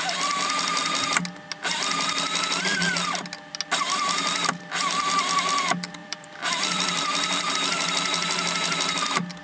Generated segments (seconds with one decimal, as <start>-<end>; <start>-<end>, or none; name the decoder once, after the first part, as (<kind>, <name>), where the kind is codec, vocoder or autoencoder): 6.0-7.5 (vocoder, BigVGAN v2)